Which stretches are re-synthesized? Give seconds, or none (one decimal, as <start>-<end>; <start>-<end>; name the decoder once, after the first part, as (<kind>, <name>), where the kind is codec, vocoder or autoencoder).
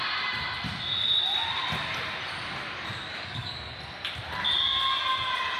3.1-3.7 (codec, DAC)